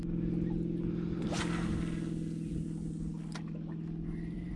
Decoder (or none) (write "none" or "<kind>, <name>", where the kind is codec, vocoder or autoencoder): none